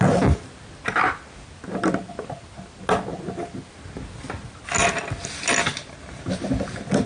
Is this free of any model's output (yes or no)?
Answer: yes